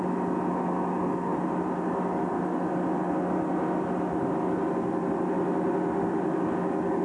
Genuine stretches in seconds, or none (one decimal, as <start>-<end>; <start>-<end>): 0.0-7.0